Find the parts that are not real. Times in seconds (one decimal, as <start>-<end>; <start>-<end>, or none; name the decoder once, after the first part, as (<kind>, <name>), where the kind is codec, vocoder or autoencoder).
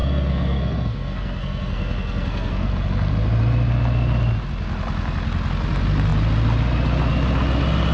0.0-2.7 (codec, SNAC)